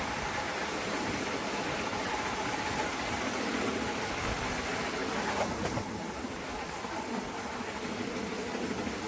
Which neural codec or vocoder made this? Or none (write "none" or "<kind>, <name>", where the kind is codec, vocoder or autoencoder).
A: none